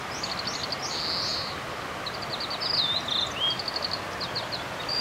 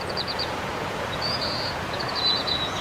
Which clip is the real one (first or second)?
first